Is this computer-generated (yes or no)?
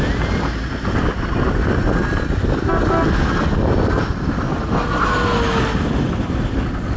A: no